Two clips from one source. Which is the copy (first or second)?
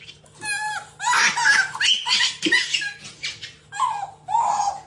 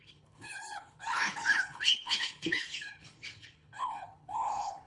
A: second